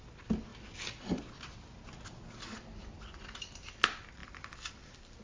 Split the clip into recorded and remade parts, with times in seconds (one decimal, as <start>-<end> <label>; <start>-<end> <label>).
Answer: 0.0-5.2 recorded